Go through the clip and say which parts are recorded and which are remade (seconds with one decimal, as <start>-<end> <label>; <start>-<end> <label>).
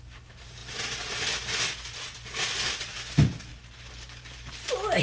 0.0-5.0 recorded